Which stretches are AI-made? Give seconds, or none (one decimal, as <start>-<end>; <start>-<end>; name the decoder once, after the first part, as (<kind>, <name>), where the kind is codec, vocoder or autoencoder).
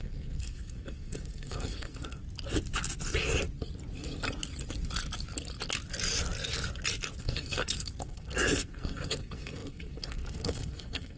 0.0-2.2 (codec, SNAC); 7.2-11.2